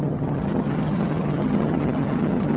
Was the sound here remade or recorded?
remade